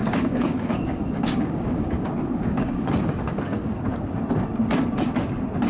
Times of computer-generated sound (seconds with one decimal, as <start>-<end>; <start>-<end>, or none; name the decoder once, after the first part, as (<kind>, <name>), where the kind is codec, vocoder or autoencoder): 0.0-3.4 (codec, DAC)

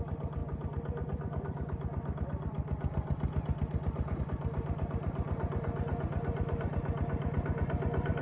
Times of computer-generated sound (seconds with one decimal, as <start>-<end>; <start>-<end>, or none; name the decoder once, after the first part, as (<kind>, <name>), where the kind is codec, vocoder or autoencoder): none

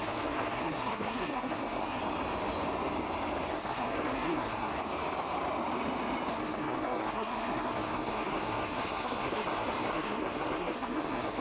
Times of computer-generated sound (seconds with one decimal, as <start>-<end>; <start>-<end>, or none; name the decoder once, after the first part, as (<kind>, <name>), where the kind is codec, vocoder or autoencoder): 0.0-2.0 (codec, SNAC); 3.5-4.7; 6.3-11.4

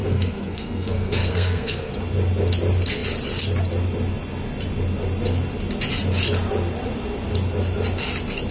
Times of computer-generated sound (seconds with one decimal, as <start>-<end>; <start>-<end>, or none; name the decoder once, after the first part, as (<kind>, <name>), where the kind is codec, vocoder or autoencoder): 0.0-2.0 (codec, SNAC)